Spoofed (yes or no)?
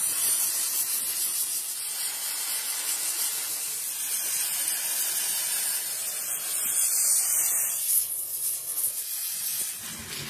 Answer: no